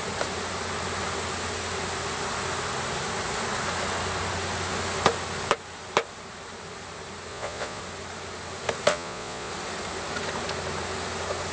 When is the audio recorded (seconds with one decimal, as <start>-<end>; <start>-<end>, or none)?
0.0-7.3; 7.8-8.9; 9.5-11.5